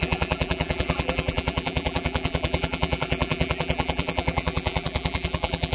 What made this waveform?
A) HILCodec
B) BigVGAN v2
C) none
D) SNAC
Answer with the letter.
B